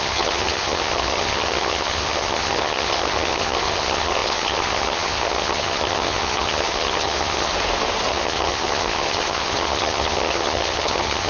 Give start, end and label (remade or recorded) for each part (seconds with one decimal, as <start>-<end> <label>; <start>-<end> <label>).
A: 0.0-7.5 remade; 7.5-8.1 recorded; 8.1-11.3 remade